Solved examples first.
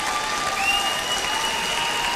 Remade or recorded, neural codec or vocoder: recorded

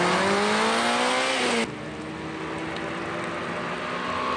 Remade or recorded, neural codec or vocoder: recorded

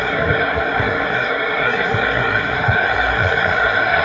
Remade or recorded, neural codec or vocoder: remade, codec, SNAC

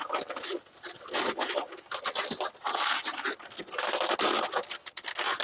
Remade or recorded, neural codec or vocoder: recorded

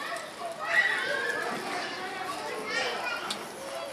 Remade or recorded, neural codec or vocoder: recorded